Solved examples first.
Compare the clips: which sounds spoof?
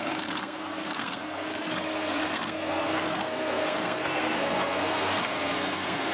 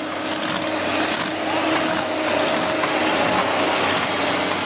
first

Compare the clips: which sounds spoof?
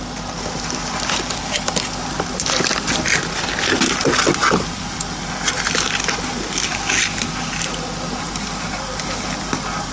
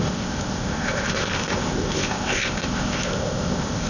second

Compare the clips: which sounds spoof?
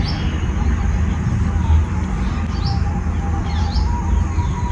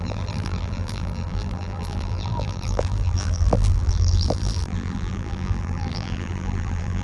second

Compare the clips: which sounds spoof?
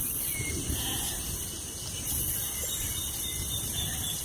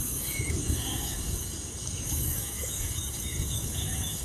second